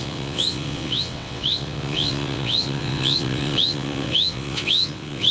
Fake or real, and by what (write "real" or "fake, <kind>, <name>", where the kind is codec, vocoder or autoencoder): fake, vocoder, WaveNeXt